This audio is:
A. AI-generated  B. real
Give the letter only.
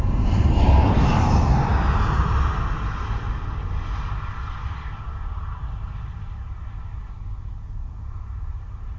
B